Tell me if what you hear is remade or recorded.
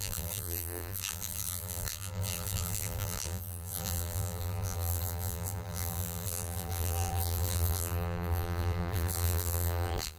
remade